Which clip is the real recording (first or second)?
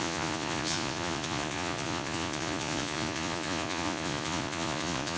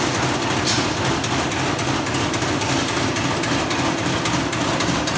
second